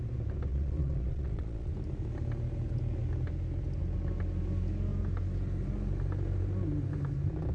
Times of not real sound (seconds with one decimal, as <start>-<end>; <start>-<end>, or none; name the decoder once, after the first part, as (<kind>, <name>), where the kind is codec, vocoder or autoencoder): 0.5-1.7 (vocoder, Vocos)